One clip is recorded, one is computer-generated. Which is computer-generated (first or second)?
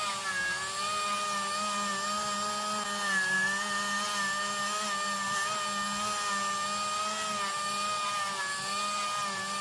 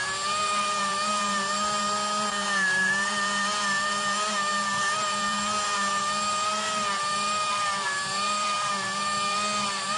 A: second